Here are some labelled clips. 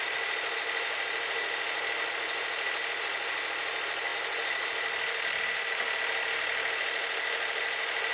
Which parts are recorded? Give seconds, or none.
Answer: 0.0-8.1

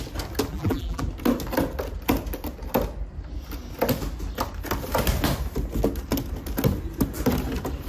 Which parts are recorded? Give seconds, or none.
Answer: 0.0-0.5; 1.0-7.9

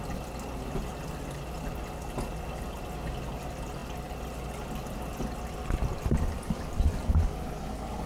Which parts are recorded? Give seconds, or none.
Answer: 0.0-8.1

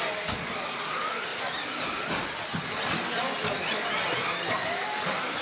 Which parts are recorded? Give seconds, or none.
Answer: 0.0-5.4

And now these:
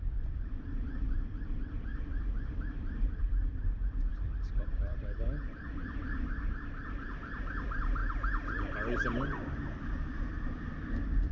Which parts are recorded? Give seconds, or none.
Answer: 8.0-10.5

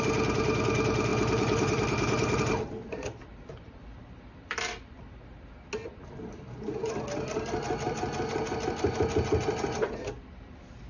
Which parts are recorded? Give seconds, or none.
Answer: 0.0-1.1; 2.4-10.9